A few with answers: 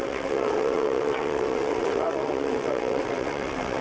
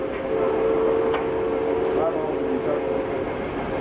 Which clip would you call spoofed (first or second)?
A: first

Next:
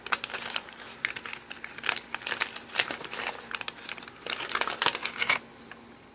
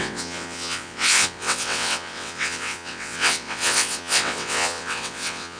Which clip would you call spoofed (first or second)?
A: second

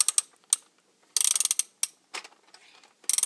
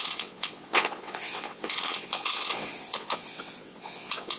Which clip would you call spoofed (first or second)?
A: second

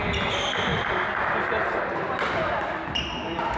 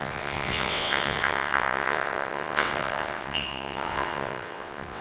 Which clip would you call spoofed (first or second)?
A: second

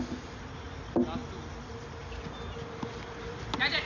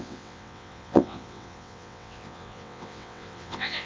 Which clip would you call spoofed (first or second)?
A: second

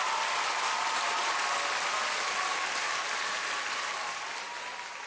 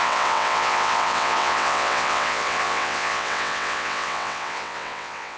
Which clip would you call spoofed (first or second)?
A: second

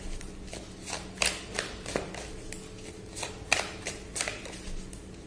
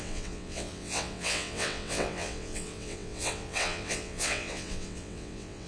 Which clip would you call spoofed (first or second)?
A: second